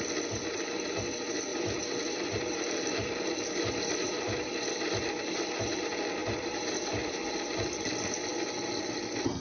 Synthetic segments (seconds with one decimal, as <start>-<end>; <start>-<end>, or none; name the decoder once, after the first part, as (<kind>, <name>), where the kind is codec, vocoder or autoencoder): none